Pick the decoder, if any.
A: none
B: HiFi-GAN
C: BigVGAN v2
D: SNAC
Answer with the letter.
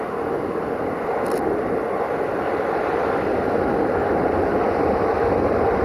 A